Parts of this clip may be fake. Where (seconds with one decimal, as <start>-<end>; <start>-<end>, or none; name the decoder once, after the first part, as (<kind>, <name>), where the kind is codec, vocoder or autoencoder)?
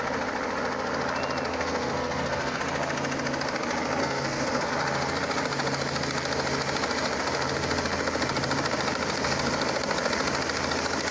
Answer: 1.5-2.6 (codec, SNAC); 4.0-4.7